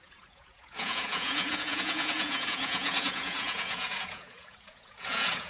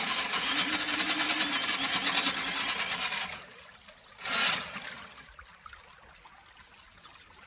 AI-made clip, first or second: first